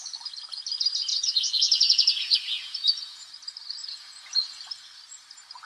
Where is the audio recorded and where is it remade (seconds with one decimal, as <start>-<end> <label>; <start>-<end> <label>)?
0.0-1.1 recorded; 1.1-3.3 remade; 3.3-3.8 recorded; 3.8-4.6 remade; 4.6-5.7 recorded